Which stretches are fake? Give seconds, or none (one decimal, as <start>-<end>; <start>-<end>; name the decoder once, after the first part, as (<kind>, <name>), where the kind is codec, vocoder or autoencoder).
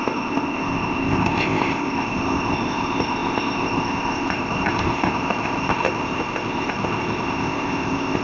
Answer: 0.0-8.2 (codec, ZipCodec)